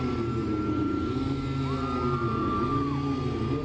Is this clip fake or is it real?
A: real